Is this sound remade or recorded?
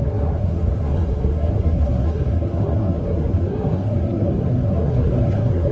remade